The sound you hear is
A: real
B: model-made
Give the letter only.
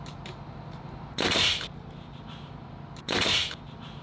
B